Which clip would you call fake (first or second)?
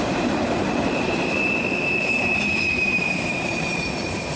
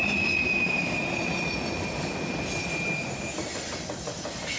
first